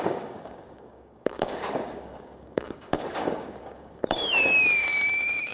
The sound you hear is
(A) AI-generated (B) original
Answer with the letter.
A